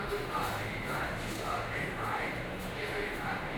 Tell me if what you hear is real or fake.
fake